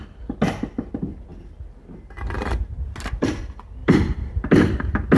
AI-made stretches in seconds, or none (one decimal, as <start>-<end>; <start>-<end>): 3.8-4.8